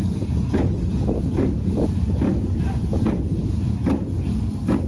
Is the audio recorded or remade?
recorded